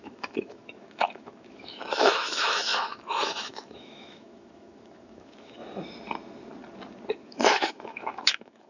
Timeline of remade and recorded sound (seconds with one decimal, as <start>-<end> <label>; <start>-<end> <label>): 0.0-5.6 remade; 5.6-7.1 recorded; 7.1-8.7 remade